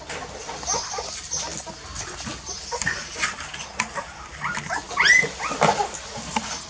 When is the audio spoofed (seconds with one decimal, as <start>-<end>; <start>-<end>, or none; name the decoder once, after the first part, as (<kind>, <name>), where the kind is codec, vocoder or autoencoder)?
none